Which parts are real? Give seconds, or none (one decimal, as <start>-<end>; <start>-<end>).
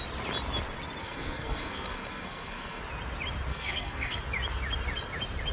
0.0-1.0; 2.8-3.5; 4.2-5.5